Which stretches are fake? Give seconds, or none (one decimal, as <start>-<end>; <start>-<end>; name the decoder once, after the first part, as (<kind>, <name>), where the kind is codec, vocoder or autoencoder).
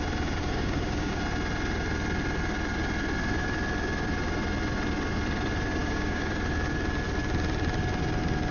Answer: 0.4-1.2 (codec, DAC); 5.8-6.4